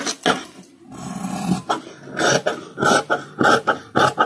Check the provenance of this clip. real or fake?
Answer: real